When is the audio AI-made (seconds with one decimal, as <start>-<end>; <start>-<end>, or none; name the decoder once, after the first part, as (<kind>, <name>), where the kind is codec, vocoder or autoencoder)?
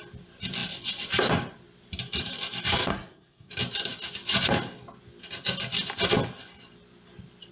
2.9-3.5 (codec, SNAC)